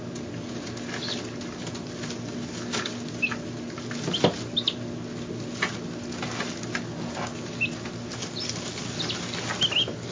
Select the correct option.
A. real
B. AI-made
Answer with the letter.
A